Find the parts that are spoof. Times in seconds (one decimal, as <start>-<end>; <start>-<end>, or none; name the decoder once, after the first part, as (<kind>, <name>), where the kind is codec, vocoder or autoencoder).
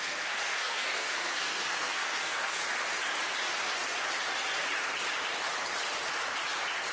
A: 0.0-2.6 (codec, SNAC)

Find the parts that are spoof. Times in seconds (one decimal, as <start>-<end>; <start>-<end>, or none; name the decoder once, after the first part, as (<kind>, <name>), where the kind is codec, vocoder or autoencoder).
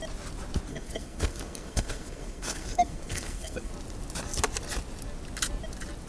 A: 0.7-3.7 (codec, SNAC)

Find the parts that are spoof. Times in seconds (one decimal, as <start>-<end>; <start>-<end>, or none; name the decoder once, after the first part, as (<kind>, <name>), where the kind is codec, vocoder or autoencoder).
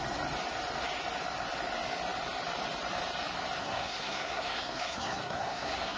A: 3.6-6.0 (codec, SNAC)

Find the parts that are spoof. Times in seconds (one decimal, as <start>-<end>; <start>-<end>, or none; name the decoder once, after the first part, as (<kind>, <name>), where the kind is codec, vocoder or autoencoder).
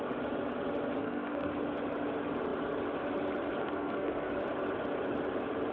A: 1.0-1.5 (codec, SNAC); 3.6-4.3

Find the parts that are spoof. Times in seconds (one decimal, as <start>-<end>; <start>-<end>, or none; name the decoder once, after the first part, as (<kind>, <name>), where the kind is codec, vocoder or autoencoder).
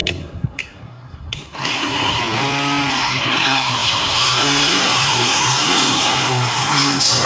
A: 0.0-2.2 (codec, SNAC); 2.9-7.3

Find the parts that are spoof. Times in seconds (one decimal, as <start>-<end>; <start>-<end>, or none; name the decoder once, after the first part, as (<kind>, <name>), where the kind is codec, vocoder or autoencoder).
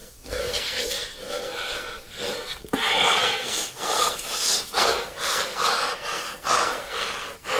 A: 0.0-7.6 (codec, SNAC)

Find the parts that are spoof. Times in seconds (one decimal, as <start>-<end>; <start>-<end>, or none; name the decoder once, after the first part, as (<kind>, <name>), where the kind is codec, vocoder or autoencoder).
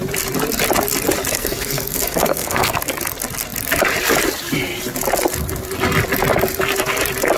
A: 1.3-2.8 (codec, SNAC)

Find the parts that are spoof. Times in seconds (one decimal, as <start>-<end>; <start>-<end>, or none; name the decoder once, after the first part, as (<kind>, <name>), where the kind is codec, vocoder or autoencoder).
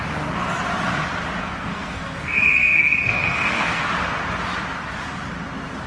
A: 1.4-3.9 (codec, SNAC)